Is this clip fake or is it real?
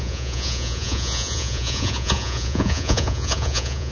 fake